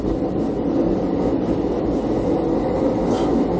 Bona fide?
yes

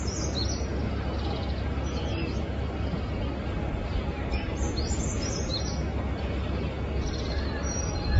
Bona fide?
yes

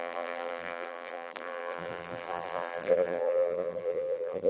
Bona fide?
no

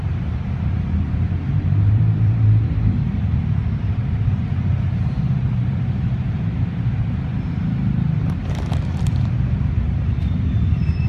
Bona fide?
no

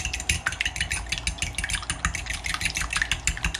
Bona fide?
yes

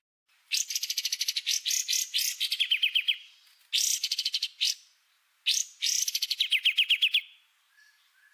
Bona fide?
yes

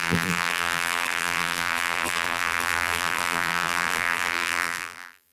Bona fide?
no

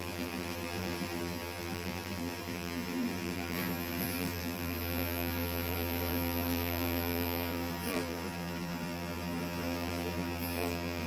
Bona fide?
no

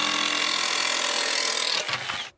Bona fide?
yes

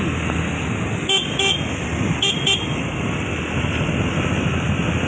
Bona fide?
yes